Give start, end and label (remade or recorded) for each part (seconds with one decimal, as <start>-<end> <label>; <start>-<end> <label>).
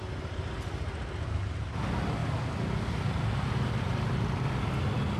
0.0-5.2 recorded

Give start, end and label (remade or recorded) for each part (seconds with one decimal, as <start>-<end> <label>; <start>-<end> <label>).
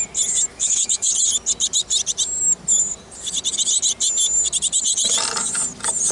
0.0-0.5 recorded; 0.5-1.1 remade; 1.1-6.1 recorded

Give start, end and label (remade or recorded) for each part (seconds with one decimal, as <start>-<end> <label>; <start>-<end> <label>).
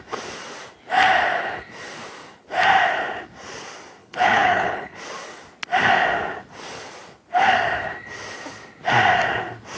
0.0-4.0 recorded; 4.0-5.0 remade; 5.0-9.8 recorded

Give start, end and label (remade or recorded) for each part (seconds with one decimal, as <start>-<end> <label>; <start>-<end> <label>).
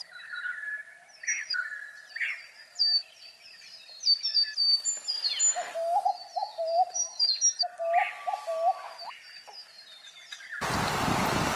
0.0-6.5 recorded; 6.5-7.3 remade; 7.3-11.6 recorded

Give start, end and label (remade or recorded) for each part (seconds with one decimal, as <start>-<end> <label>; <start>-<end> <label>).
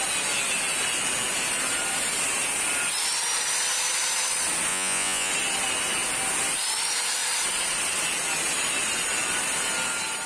0.0-4.7 recorded; 4.7-5.3 remade; 5.3-10.3 recorded